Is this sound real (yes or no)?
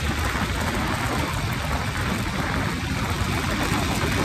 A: yes